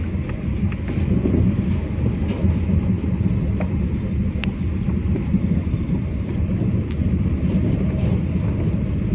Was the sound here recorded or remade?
recorded